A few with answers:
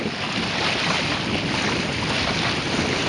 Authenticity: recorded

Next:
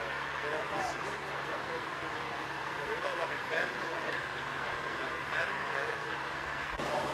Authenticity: remade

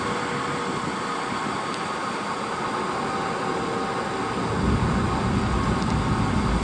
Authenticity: recorded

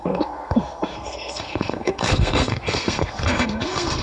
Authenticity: remade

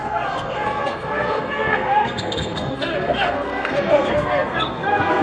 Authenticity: remade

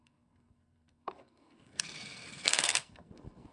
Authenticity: remade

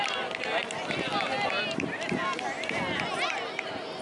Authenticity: recorded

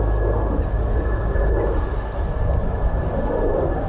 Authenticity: recorded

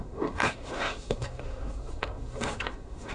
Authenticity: remade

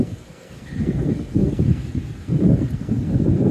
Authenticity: remade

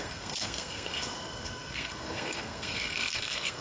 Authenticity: remade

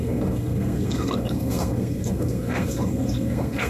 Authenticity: remade